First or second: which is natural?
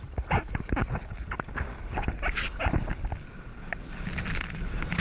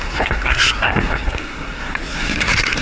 first